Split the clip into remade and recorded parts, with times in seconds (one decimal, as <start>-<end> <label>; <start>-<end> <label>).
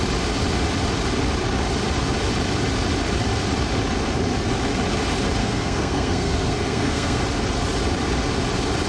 0.0-5.4 recorded; 5.4-7.2 remade; 7.2-8.9 recorded